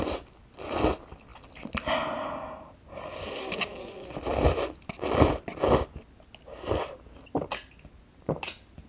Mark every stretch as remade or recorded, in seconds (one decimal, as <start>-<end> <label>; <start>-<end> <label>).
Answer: 0.0-8.9 recorded